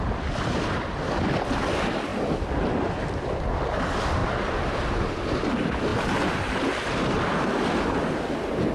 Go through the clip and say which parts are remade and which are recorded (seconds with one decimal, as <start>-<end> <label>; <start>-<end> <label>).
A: 0.0-2.1 recorded; 2.1-3.0 remade; 3.0-8.7 recorded